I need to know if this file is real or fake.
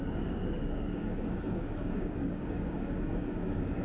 fake